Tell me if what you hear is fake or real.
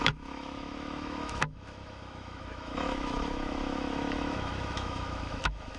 fake